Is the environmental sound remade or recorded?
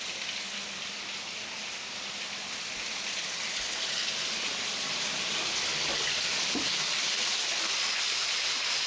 recorded